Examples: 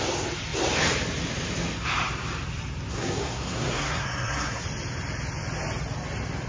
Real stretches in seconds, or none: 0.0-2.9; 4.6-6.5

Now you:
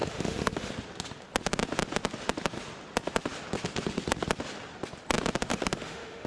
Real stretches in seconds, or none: 0.7-5.5

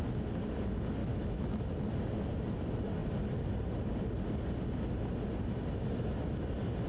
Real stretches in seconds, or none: 0.0-1.0; 1.6-6.9

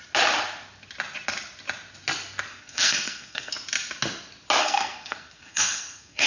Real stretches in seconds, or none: 0.0-2.5; 3.5-4.6

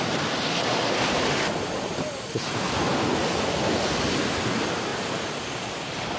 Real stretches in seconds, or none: 0.0-6.2